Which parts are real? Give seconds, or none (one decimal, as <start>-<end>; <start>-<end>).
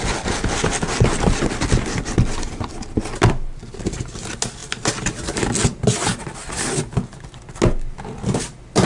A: 0.0-8.9